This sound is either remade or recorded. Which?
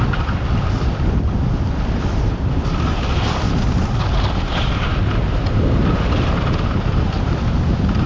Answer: remade